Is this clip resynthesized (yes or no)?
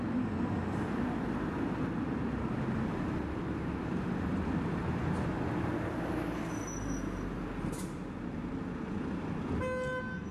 no